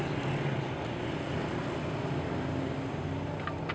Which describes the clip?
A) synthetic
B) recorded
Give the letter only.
B